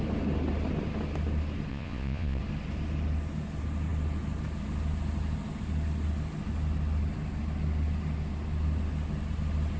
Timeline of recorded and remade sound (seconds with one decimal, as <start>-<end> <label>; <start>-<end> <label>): 0.0-1.7 recorded; 1.7-2.4 remade; 2.4-9.8 recorded